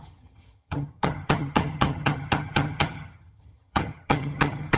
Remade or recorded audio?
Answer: remade